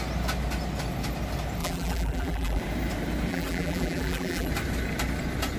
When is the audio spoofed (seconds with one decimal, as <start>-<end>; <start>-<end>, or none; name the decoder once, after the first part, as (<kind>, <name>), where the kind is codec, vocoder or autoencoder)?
1.6-2.6 (vocoder, BigVGAN v2); 3.3-4.5